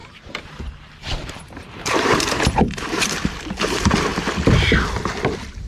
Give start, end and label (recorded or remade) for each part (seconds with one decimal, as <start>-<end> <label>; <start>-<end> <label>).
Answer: 0.0-3.2 remade; 3.2-5.7 recorded